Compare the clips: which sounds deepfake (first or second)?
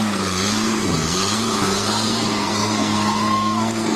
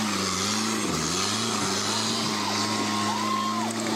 first